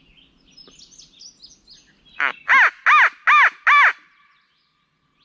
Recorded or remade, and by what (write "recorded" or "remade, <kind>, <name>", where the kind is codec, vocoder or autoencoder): recorded